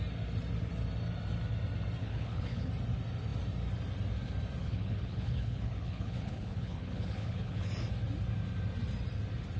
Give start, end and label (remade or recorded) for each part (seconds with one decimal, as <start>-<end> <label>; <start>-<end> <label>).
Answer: 0.0-2.0 recorded; 2.0-2.7 remade; 2.7-4.6 recorded; 4.6-7.7 remade; 7.7-9.6 recorded